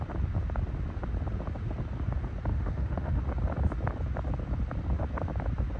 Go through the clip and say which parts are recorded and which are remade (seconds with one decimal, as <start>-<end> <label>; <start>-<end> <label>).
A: 0.0-2.5 recorded; 2.5-3.2 remade; 3.2-5.8 recorded